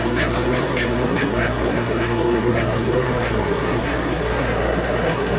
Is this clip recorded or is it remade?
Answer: remade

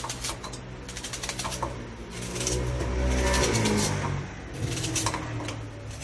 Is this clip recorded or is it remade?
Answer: recorded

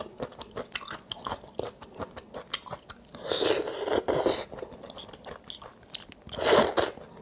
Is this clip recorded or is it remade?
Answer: recorded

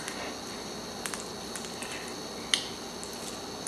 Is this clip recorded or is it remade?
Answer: recorded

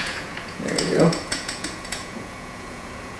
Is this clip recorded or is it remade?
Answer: remade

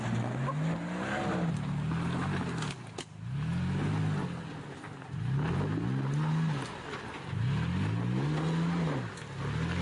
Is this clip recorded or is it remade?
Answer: recorded